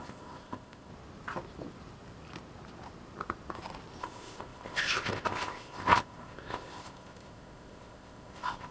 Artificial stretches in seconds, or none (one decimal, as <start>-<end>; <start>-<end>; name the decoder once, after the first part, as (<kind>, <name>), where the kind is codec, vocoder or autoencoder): 0.0-0.9 (codec, ZipCodec); 4.0-8.7